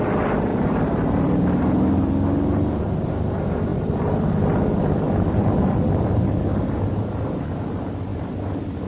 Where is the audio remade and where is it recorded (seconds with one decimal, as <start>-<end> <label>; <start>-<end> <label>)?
0.0-0.5 recorded; 0.5-2.0 remade; 2.0-3.7 recorded; 3.7-6.4 remade; 6.4-8.1 recorded; 8.1-8.9 remade